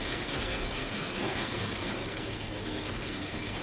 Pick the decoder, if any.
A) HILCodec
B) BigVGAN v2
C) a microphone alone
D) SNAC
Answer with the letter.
D